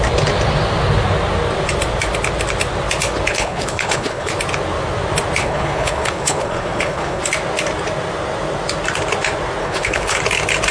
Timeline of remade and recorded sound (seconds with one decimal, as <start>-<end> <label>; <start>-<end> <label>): 0.0-3.3 recorded; 3.3-4.3 remade; 4.3-5.4 recorded; 5.4-7.2 remade; 7.2-9.6 recorded; 9.6-10.2 remade; 10.2-10.7 recorded